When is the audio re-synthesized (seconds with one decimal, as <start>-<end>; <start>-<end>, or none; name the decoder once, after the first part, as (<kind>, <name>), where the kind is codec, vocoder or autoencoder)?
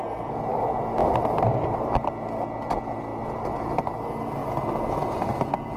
none